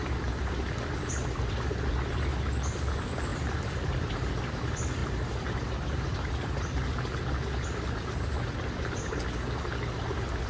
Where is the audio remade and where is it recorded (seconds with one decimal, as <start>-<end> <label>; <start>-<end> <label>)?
0.0-1.5 remade; 1.5-3.3 recorded; 3.3-4.3 remade; 4.3-5.0 recorded; 5.0-6.8 remade; 6.8-10.5 recorded